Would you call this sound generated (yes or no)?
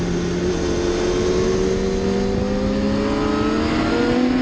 no